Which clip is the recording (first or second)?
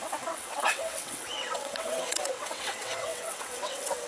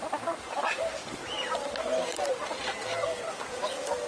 second